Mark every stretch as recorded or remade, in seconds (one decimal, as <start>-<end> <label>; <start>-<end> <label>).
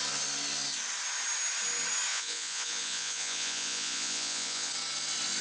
0.0-2.1 recorded; 2.1-4.7 remade; 4.7-5.4 recorded